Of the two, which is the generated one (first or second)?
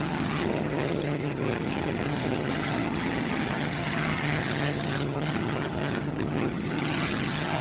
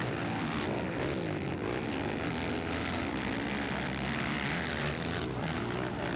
first